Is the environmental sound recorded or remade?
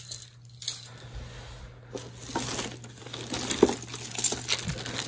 recorded